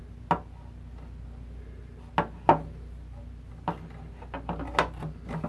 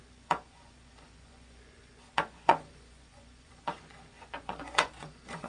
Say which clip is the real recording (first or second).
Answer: first